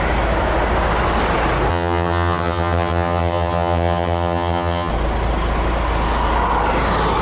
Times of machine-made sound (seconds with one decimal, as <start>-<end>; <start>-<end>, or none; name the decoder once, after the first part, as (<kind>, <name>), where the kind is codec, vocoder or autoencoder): 1.7-4.9 (vocoder, HiFi-GAN)